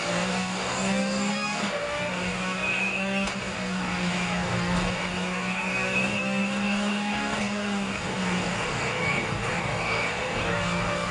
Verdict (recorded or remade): remade